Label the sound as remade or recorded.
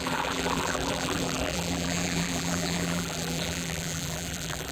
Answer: remade